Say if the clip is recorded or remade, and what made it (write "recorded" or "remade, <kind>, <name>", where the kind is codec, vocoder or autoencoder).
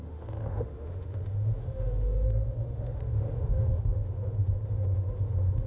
remade, autoencoder, DAC-VAE